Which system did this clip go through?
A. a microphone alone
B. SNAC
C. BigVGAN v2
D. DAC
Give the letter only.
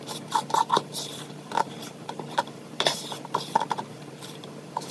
C